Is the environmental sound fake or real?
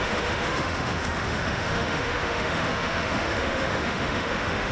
fake